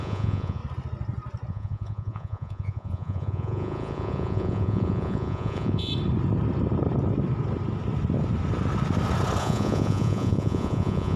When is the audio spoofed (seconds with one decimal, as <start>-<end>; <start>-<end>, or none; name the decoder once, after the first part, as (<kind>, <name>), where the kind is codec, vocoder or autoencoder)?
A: 0.0-0.6 (vocoder, Vocos); 1.5-5.9; 9.4-11.2